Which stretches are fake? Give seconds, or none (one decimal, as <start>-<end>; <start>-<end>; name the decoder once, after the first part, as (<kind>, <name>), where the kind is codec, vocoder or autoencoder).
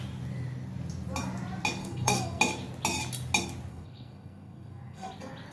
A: 1.8-2.4 (codec, SNAC); 3.7-5.1